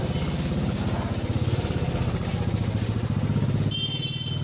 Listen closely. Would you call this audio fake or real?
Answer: real